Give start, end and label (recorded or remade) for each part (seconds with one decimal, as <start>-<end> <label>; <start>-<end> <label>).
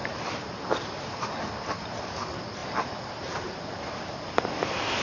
0.0-1.5 remade; 1.5-2.6 recorded; 2.6-3.7 remade; 3.7-5.0 recorded